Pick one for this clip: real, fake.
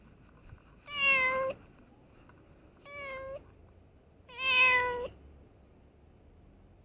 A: real